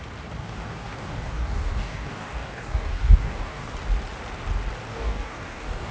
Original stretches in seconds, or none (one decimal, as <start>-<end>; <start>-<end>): 0.0-0.4; 3.7-4.9